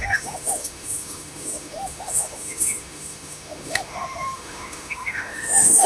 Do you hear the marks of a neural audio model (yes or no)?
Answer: yes